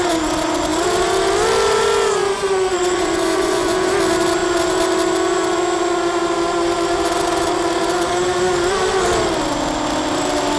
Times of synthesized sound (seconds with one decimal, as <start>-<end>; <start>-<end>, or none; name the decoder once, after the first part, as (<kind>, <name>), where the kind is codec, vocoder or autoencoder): 2.2-3.9 (vocoder, Vocos)